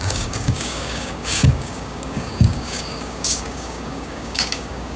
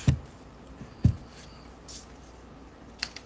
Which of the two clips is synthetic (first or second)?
first